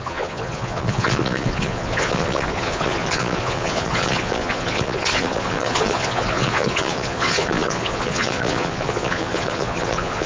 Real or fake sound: fake